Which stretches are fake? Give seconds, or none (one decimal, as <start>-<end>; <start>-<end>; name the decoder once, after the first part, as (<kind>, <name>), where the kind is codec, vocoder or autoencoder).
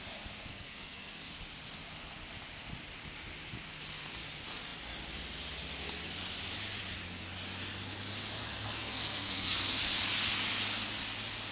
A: 0.5-1.3 (codec, SNAC); 8.4-9.8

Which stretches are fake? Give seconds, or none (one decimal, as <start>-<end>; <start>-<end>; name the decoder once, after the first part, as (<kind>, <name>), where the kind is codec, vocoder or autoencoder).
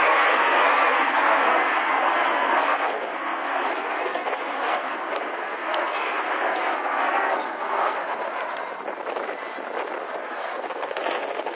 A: 0.0-8.2 (codec, SNAC); 10.2-11.5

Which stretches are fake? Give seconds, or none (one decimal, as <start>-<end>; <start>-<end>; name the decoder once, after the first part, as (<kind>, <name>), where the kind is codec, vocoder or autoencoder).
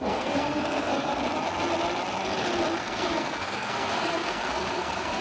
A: 0.0-1.1 (codec, SNAC); 2.8-5.2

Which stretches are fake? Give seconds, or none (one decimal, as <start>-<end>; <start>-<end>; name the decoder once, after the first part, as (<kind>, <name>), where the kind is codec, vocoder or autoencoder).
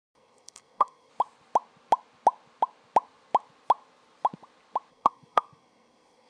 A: 0.0-1.1 (codec, SNAC); 4.9-6.3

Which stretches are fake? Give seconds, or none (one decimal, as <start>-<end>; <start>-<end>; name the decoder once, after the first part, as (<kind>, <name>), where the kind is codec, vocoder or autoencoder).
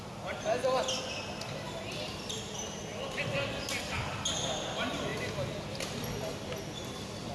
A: none